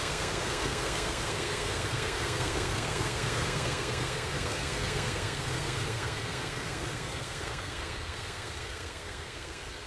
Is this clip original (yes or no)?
no